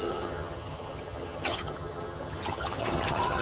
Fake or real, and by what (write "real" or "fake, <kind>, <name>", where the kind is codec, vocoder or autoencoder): fake, vocoder, HiFi-GAN